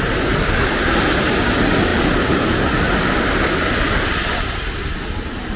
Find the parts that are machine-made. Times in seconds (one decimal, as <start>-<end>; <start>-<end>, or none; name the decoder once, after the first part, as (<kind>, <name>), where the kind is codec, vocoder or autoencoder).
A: none